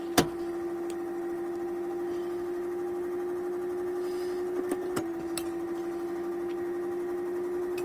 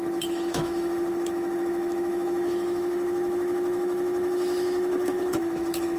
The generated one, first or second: second